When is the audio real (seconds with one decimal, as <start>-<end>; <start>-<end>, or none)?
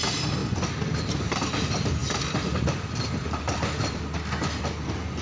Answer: 0.0-2.0